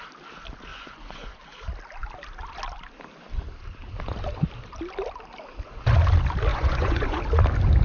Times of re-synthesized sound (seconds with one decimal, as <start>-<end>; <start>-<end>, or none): 0.7-1.4; 6.5-7.2